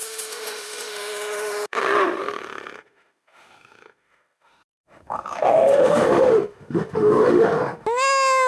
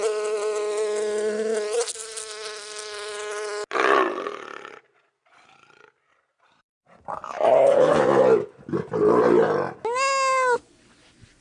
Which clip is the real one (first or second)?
second